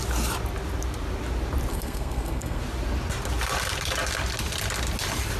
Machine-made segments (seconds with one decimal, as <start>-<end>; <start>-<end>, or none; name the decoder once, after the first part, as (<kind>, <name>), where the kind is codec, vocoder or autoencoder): 1.7-2.6 (codec, SNAC)